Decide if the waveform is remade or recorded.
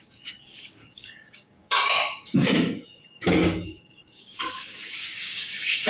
remade